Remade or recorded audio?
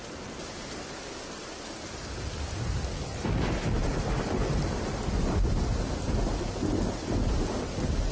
recorded